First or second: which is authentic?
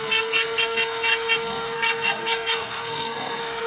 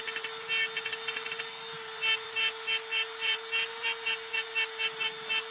second